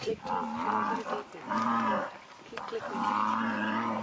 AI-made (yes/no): no